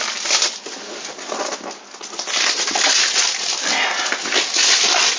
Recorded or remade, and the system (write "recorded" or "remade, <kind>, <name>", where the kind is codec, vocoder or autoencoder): recorded